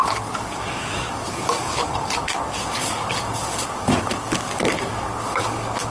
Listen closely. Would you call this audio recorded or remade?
remade